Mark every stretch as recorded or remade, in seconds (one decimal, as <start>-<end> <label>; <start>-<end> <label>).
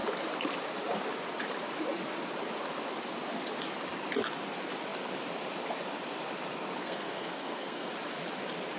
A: 0.0-6.8 recorded; 6.8-7.9 remade; 7.9-8.8 recorded